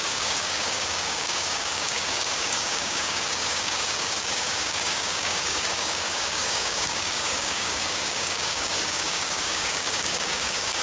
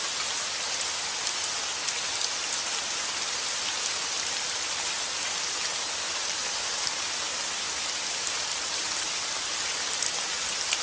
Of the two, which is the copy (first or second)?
first